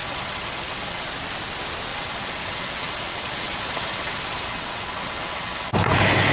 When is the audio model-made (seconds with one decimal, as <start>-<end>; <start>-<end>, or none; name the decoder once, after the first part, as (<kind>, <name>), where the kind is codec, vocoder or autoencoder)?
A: 0.0-1.1 (vocoder, WaveNeXt); 1.9-5.7